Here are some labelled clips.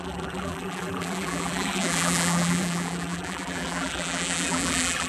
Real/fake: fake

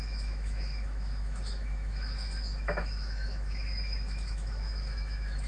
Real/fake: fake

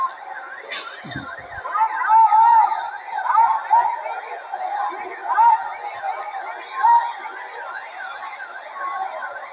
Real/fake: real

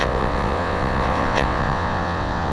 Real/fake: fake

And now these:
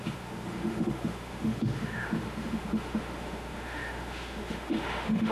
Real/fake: fake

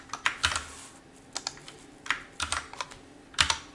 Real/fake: real